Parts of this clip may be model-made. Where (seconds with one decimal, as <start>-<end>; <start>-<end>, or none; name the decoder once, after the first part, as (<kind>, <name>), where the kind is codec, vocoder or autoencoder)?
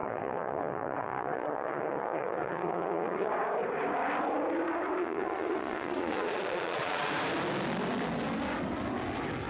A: 0.0-3.3 (vocoder, Vocos); 5.0-7.1